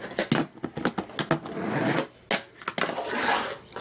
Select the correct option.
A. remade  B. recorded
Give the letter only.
B